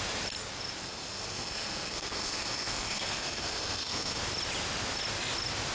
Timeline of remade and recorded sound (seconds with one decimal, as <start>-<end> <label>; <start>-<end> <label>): 0.0-0.8 recorded; 0.8-4.2 remade; 4.2-5.7 recorded